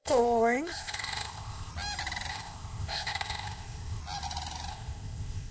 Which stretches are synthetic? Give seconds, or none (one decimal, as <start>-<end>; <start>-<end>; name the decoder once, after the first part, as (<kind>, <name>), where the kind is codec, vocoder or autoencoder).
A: 0.0-1.7 (codec, ZipCodec); 2.3-4.0; 4.7-5.5